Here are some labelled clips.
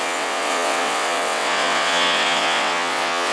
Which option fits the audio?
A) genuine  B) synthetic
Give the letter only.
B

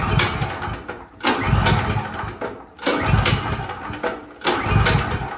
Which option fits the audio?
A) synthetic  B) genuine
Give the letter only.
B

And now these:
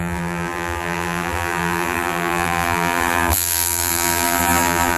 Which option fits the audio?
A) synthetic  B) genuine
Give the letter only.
A